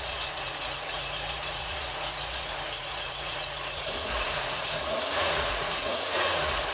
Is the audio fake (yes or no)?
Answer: yes